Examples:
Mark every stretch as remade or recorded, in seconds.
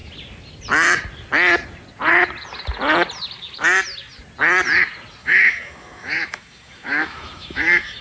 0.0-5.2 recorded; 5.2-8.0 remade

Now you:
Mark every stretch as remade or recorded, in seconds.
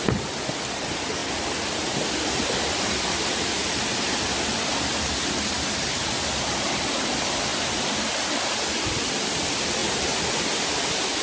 0.0-11.2 recorded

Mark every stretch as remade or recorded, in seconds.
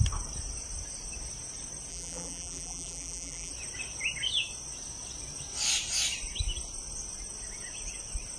0.0-1.9 recorded; 1.9-3.5 remade; 3.5-8.4 recorded